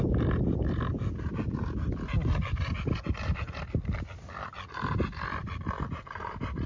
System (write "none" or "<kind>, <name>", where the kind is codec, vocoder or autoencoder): none